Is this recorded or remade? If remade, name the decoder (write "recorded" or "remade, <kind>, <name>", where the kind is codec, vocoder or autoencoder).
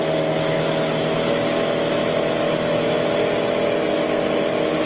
recorded